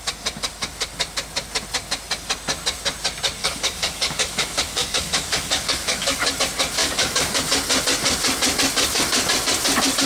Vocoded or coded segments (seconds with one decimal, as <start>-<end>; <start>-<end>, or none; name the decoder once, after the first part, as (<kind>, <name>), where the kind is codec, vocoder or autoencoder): 3.4-6.3 (codec, DAC); 6.8-7.4